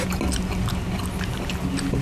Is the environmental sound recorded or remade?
recorded